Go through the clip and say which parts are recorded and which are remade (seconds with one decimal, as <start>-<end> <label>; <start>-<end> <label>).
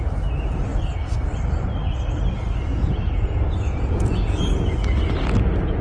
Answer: 0.0-2.7 recorded; 2.7-4.4 remade; 4.4-5.8 recorded